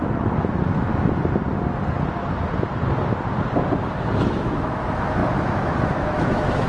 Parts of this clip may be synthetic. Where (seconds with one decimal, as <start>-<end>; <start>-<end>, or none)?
4.0-6.7